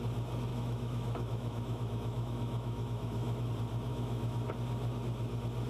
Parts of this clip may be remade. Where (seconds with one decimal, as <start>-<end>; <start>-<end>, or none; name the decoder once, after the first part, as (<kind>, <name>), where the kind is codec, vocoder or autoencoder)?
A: 0.5-3.5 (autoencoder, DAC-VAE); 3.9-4.5